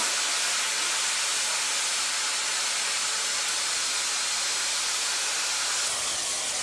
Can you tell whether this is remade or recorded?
recorded